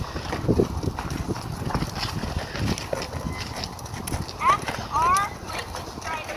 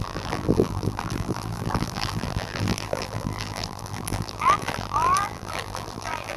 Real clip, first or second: first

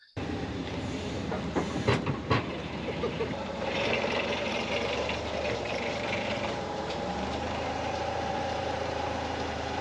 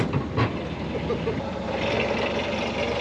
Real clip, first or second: second